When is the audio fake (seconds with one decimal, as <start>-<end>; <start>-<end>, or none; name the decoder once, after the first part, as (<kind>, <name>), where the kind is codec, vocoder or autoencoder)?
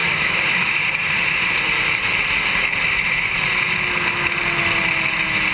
0.0-0.7 (codec, DAC)